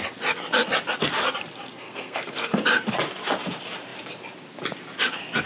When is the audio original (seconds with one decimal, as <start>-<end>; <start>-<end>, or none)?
0.0-1.7; 2.6-5.5